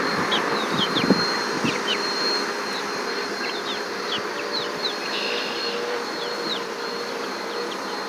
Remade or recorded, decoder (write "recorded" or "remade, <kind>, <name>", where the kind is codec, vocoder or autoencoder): remade, vocoder, BigVGAN v2